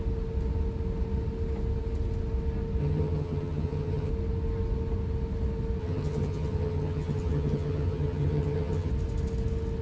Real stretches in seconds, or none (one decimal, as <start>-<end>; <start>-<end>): 0.0-2.8; 4.1-5.8; 8.9-9.8